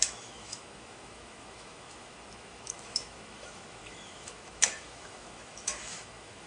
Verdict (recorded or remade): remade